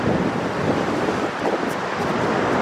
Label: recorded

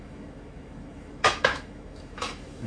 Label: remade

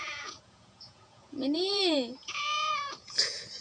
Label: remade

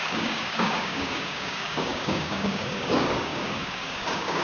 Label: remade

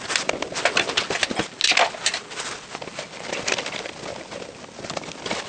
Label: recorded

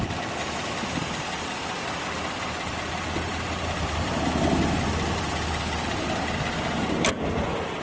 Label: recorded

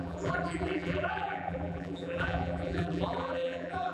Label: remade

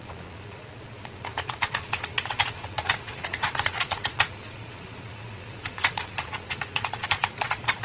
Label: remade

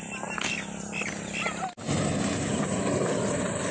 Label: recorded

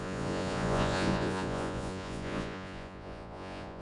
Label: remade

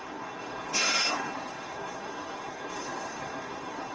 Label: remade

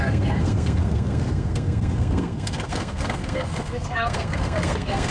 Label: remade